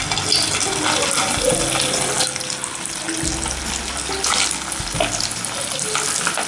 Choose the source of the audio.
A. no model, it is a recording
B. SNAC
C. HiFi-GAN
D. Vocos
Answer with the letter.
A